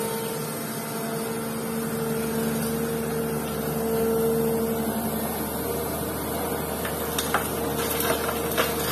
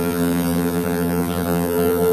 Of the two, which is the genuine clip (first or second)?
first